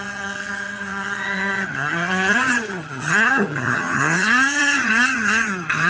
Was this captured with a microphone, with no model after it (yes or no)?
no